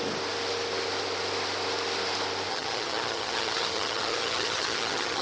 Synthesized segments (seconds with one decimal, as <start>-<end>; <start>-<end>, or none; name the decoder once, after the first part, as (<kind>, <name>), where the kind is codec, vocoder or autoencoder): 2.5-5.2 (vocoder, HiFi-GAN)

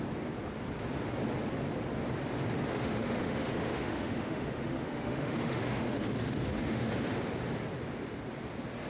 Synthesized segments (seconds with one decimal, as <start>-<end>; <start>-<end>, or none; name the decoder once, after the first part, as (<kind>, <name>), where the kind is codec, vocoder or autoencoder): 2.7-6.9 (autoencoder, DAC-VAE)

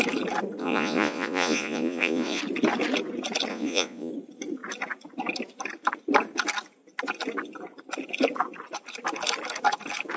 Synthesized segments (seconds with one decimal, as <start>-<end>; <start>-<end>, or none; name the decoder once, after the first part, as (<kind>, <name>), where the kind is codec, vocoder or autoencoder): 0.6-2.4 (vocoder, Vocos); 3.5-4.1

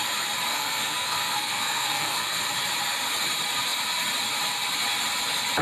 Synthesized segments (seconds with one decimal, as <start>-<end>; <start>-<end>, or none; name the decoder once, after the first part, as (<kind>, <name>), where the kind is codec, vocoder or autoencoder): 0.5-2.4 (codec, SNAC)